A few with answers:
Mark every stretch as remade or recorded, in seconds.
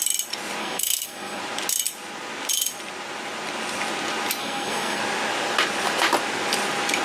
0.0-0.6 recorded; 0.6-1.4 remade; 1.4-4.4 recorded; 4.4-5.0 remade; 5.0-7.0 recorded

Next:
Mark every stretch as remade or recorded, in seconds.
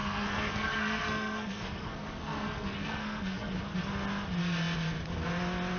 0.0-3.5 remade; 3.5-5.8 recorded